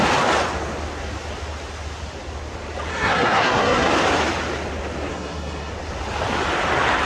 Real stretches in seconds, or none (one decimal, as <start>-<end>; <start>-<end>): 0.0-2.9; 3.9-5.1; 5.7-7.1